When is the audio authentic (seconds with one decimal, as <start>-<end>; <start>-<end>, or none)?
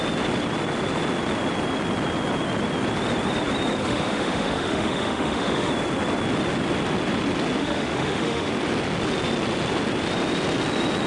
0.0-3.8; 5.7-7.6; 8.5-11.1